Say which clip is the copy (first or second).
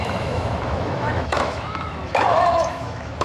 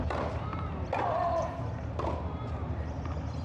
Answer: first